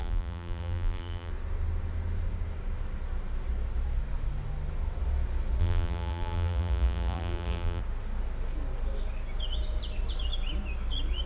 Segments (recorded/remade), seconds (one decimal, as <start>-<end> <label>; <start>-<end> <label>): 0.0-1.3 remade; 1.3-5.6 recorded; 5.6-7.8 remade; 7.8-11.3 recorded